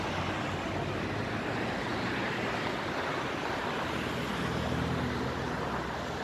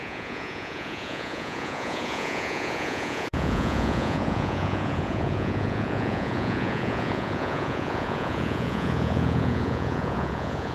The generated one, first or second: second